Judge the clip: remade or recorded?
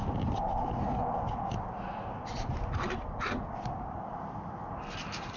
recorded